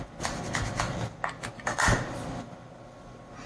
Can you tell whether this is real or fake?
real